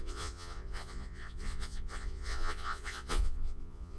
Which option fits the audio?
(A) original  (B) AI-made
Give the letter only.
B